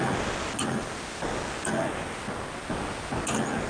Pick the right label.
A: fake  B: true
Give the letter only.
B